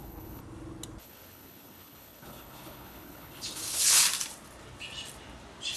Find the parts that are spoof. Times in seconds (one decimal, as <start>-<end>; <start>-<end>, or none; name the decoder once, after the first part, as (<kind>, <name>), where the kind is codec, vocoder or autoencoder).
0.0-0.4 (codec, HILCodec); 1.0-4.0